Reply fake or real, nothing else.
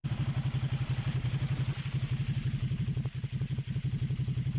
real